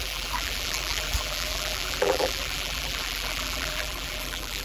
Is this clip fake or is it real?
fake